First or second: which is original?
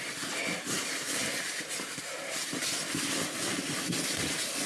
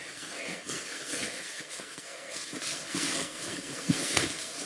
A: first